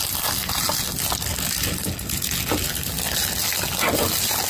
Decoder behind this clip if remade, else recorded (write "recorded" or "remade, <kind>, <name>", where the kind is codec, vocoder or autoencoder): recorded